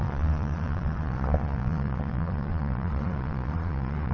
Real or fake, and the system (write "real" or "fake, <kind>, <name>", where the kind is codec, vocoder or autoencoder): fake, vocoder, Vocos